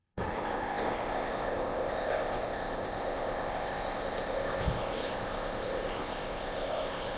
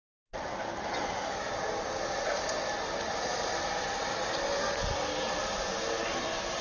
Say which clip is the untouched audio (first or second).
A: second